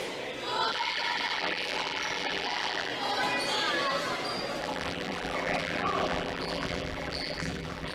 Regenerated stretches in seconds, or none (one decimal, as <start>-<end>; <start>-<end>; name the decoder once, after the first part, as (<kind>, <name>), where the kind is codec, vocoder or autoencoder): 0.7-2.9 (vocoder, BigVGAN v2); 4.6-7.9